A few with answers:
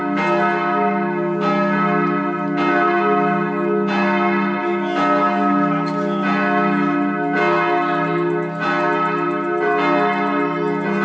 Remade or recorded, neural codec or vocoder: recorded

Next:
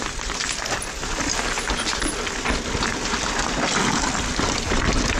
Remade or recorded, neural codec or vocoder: recorded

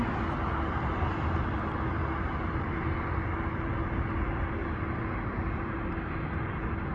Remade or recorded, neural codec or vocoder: recorded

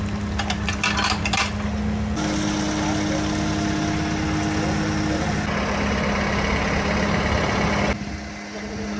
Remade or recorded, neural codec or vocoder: recorded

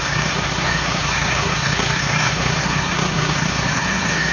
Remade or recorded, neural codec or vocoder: remade, codec, SNAC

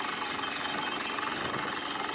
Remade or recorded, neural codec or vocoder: recorded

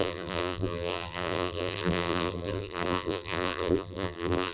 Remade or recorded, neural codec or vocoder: remade, vocoder, BigVGAN v2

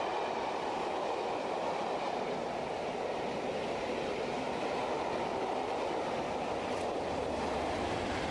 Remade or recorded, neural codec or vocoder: recorded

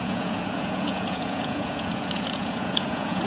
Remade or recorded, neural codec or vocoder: remade, vocoder, Vocos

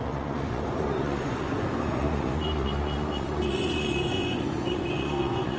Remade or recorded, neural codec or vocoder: remade, vocoder, Vocos